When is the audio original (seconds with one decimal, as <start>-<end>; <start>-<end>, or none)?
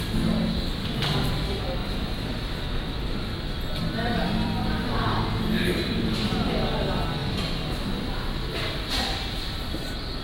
0.0-1.8; 6.5-10.2